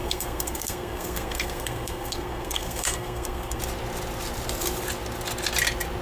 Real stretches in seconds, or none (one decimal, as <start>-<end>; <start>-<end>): 3.6-6.0